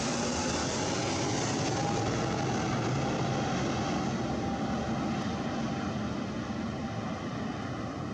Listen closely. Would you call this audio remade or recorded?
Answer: recorded